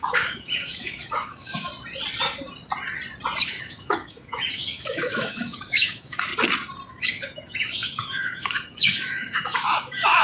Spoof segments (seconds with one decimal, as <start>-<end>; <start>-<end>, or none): 0.0-1.7; 3.4-6.3; 6.9-10.2